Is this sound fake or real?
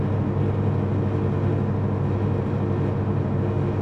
real